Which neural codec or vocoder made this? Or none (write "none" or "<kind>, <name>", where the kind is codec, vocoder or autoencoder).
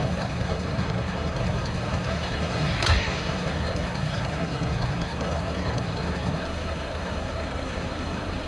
codec, SNAC